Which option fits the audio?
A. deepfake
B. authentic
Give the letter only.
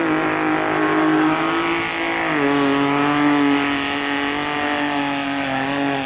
B